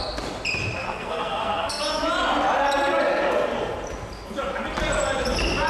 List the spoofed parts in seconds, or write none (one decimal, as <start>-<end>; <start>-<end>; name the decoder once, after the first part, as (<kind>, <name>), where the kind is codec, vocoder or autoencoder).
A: 0.8-1.8 (codec, SNAC)